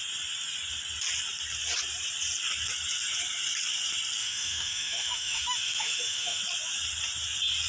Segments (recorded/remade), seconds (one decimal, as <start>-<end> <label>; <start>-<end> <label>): 0.0-4.2 recorded; 4.2-6.4 remade; 6.4-7.7 recorded